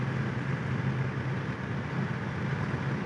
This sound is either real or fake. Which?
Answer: real